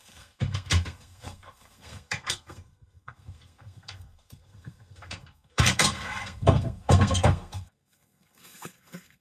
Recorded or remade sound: remade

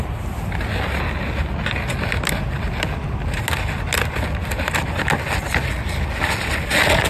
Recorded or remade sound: recorded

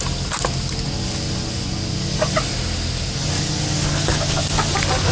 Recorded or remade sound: recorded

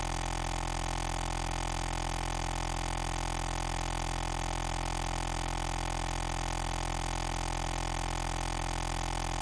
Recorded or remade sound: recorded